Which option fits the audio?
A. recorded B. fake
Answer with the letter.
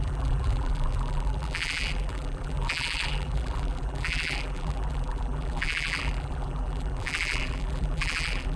B